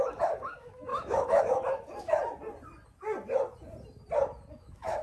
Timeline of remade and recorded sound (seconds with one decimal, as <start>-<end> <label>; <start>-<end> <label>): 0.0-2.2 remade; 2.2-4.5 recorded; 4.5-5.0 remade